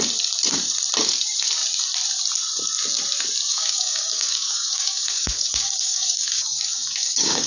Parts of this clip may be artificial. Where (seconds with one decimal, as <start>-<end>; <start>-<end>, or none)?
3.5-7.5